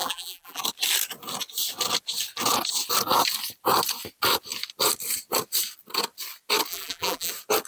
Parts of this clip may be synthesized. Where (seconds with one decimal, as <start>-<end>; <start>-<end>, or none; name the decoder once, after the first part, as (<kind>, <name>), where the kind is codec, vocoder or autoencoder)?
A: 0.0-0.6 (vocoder, BigVGAN v2); 6.7-7.3